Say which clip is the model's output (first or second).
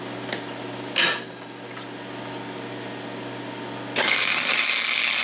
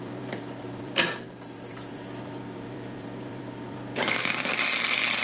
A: second